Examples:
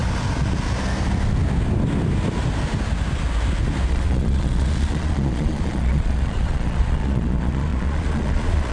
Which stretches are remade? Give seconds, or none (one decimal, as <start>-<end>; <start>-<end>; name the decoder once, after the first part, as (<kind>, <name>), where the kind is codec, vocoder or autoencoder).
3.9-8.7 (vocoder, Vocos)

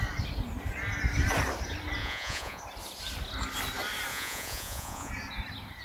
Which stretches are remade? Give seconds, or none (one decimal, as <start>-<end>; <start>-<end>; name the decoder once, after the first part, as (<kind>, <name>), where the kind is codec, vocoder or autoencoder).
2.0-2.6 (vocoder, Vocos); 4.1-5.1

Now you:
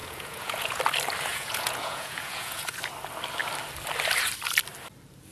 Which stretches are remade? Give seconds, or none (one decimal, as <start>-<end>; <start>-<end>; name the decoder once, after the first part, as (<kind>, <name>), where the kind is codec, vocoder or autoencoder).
0.0-0.8 (vocoder, Vocos); 1.3-2.8

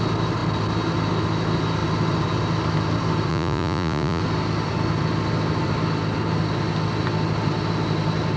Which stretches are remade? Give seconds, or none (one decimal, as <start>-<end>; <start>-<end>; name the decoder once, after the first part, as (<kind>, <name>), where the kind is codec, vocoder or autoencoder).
3.3-4.2 (vocoder, Vocos)

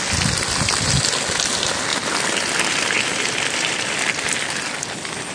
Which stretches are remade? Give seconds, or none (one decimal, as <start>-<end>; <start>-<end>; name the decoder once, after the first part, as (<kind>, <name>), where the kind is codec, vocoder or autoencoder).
none